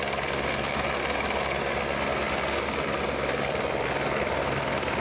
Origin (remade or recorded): recorded